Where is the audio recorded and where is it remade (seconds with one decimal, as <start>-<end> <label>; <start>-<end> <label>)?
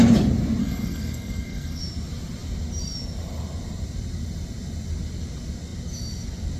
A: 0.0-0.6 recorded; 0.6-1.8 remade; 1.8-6.6 recorded